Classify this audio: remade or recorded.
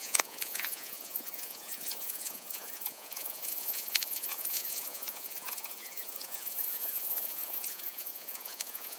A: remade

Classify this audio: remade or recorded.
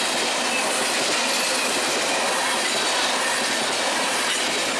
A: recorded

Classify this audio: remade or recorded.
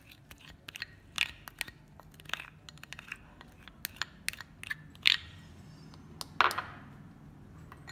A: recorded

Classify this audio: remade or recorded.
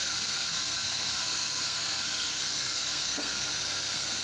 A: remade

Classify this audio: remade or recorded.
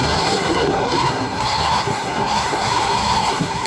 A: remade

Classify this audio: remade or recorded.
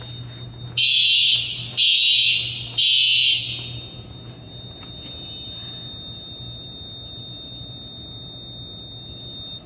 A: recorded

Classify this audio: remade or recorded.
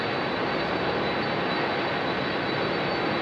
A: recorded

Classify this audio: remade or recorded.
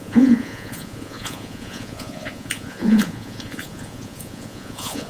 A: remade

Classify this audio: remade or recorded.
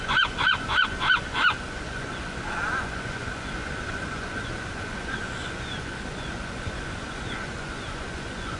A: remade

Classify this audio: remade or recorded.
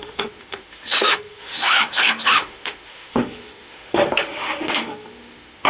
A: remade